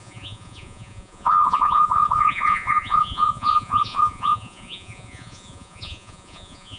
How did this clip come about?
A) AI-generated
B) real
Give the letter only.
A